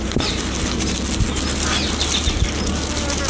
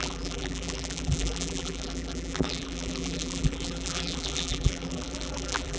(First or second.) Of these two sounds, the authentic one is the first